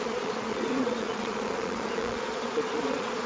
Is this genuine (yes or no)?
no